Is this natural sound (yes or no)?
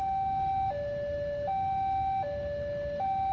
yes